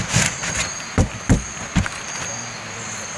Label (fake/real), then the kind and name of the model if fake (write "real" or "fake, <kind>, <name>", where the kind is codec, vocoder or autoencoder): real